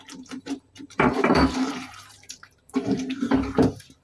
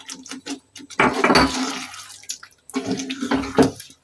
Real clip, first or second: second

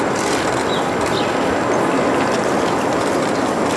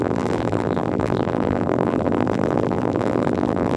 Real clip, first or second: first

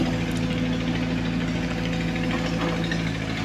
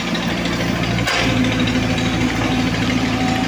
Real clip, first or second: first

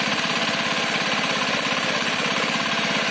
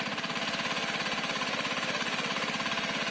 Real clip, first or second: second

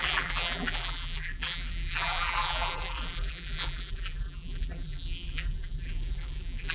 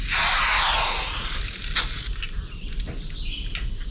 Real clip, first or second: second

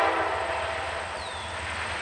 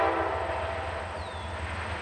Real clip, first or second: second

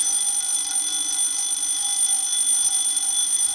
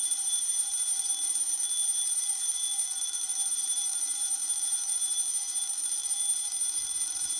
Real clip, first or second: first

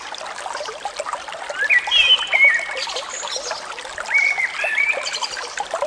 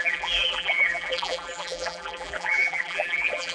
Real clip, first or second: first